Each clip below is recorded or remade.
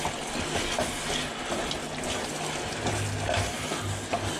recorded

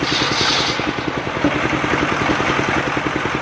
recorded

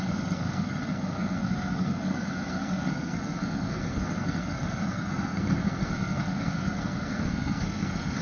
remade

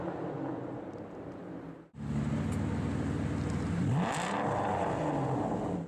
recorded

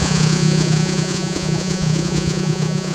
remade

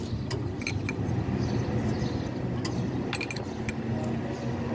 recorded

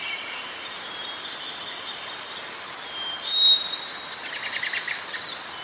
recorded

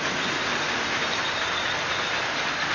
recorded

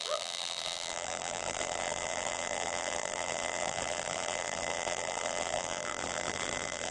remade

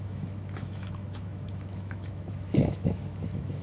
remade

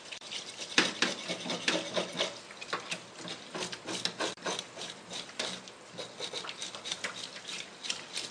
recorded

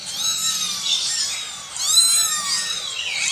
recorded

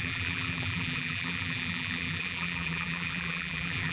remade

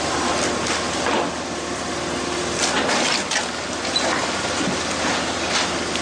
recorded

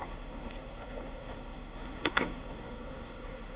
remade